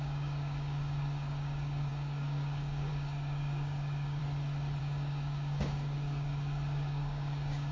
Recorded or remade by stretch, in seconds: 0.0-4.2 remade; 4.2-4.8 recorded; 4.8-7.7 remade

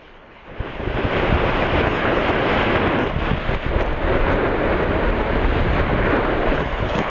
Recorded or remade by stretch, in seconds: 0.0-0.4 remade; 0.4-1.8 recorded; 1.8-2.2 remade; 2.2-6.5 recorded; 6.5-7.1 remade

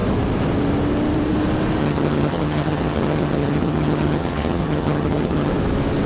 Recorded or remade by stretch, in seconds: 0.0-1.8 recorded; 1.8-5.5 remade; 5.5-6.1 recorded

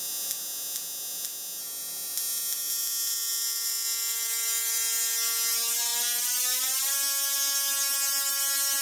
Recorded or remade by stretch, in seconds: 0.0-8.8 recorded

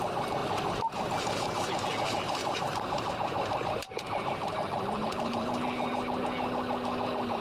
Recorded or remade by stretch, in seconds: 0.0-0.4 recorded; 0.4-1.8 remade; 1.8-2.4 recorded; 2.4-3.1 remade; 3.1-3.8 recorded; 3.8-5.9 remade; 5.9-7.4 recorded